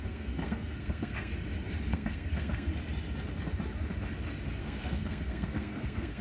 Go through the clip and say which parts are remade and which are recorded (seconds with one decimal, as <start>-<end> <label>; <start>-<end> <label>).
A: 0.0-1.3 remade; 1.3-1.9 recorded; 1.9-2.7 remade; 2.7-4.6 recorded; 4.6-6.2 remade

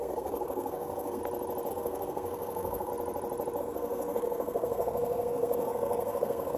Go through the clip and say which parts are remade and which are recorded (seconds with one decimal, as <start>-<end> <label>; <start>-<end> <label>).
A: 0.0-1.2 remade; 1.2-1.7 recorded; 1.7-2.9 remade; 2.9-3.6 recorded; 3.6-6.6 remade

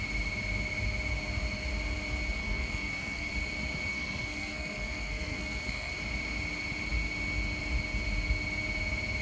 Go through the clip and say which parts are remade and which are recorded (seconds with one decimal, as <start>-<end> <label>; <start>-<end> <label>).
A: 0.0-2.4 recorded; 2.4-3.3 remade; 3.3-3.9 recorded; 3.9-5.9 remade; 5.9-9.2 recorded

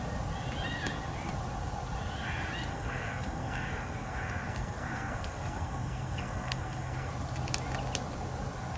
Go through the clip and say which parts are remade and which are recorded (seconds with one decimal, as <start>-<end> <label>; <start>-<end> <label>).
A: 0.0-2.7 recorded; 2.7-7.1 remade; 7.1-8.8 recorded

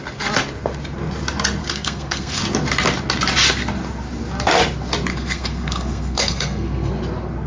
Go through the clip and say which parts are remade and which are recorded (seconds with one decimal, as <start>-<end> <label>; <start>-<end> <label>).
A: 0.0-1.6 recorded; 1.6-2.4 remade; 2.4-5.1 recorded; 5.1-6.9 remade; 6.9-7.5 recorded

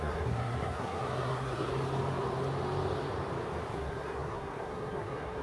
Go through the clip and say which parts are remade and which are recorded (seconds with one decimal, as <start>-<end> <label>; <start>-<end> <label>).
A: 0.0-1.7 remade; 1.7-3.7 recorded; 3.7-5.4 remade

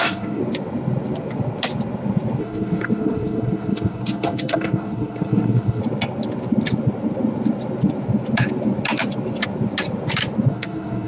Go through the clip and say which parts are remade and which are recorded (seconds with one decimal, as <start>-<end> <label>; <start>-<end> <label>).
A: 0.0-0.4 remade; 0.4-2.4 recorded; 2.4-5.8 remade; 5.8-10.5 recorded; 10.5-11.1 remade